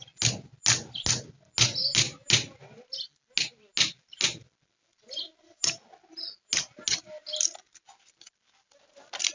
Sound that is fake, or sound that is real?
real